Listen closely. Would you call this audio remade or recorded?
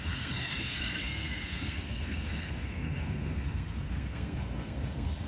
remade